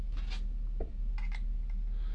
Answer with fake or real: real